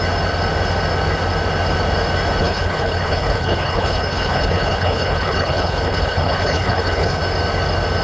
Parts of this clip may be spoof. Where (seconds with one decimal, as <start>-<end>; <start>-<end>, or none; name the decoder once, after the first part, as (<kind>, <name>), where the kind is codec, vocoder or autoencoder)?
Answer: 2.4-7.2 (codec, HILCodec)